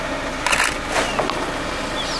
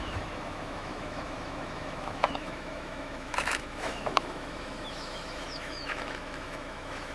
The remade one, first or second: second